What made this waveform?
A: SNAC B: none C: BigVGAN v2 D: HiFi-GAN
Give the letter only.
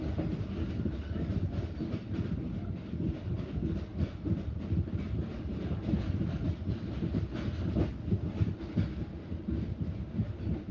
B